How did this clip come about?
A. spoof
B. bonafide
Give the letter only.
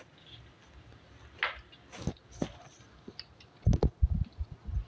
B